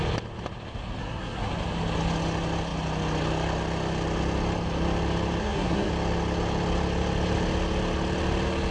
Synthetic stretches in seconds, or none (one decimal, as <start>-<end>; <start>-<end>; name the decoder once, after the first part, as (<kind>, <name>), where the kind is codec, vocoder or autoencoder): 1.0-1.5 (codec, SNAC); 5.4-5.9